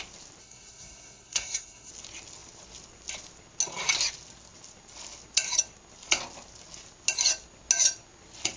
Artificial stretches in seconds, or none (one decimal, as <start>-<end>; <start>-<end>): 0.4-1.9